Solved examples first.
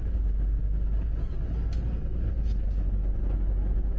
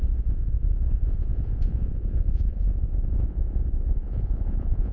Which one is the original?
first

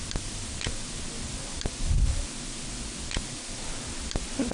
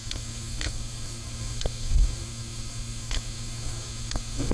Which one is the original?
first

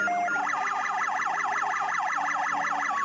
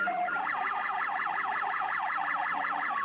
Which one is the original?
first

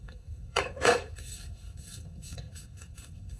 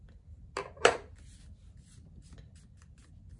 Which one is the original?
second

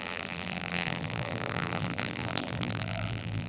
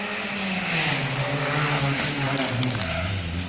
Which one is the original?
second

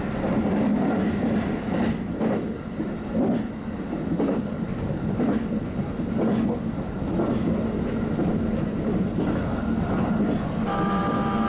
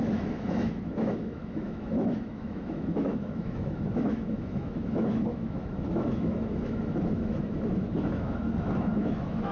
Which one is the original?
first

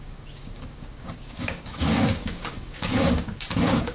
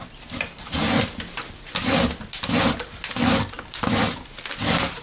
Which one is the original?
second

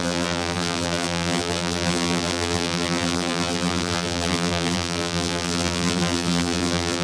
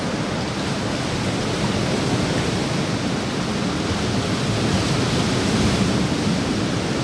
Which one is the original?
second